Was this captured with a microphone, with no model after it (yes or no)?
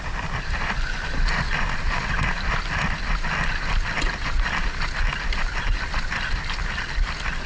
yes